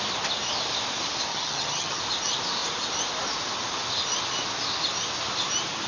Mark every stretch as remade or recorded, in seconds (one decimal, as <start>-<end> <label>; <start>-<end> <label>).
0.0-1.3 recorded; 1.3-2.0 remade; 2.0-5.9 recorded